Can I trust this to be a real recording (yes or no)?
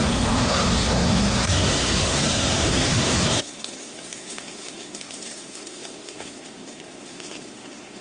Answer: no